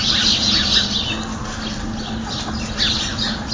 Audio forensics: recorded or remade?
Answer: recorded